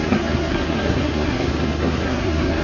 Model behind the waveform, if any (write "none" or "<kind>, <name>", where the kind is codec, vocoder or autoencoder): codec, SNAC